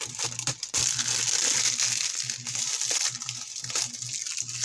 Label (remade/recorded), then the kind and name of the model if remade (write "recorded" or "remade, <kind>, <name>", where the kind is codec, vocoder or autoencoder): recorded